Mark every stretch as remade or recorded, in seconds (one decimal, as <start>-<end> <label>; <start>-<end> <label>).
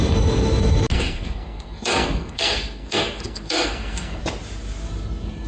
0.0-0.9 recorded; 0.9-4.2 remade; 4.2-5.5 recorded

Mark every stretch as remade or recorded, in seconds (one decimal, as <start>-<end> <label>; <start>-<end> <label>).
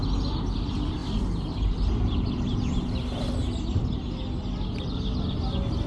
0.0-5.9 recorded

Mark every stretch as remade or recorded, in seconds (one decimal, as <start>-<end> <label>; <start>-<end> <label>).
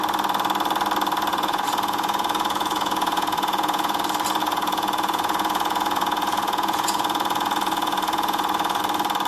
0.0-1.3 recorded; 1.3-4.0 remade; 4.0-4.4 recorded; 4.4-8.8 remade; 8.8-9.3 recorded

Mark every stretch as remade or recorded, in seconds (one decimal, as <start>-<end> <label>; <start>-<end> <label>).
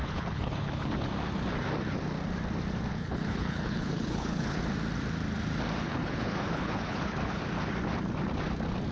0.0-0.9 remade; 0.9-2.9 recorded; 2.9-4.6 remade; 4.6-5.8 recorded; 5.8-7.4 remade; 7.4-8.9 recorded